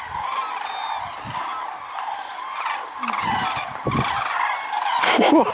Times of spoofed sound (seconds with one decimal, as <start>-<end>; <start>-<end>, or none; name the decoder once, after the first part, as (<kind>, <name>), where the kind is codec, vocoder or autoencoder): none